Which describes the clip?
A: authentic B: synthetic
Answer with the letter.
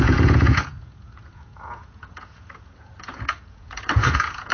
B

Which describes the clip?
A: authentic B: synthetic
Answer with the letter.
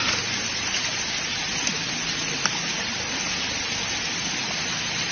A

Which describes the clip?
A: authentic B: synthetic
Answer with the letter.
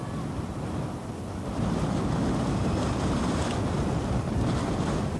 A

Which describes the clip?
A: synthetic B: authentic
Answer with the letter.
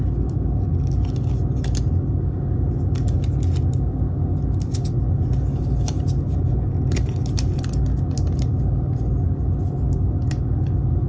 B